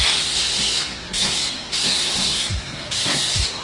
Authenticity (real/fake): fake